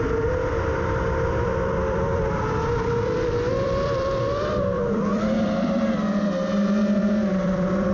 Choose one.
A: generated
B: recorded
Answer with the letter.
A